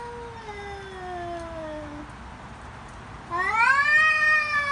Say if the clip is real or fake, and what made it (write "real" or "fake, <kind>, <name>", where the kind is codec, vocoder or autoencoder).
real